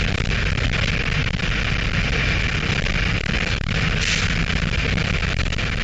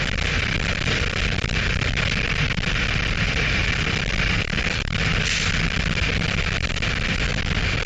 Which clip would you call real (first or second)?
first